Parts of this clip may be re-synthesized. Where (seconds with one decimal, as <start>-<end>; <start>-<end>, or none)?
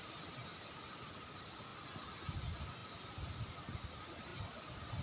none